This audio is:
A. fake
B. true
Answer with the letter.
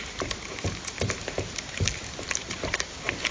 B